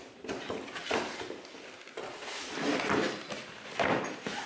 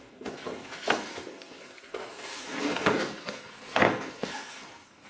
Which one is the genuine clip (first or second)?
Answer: first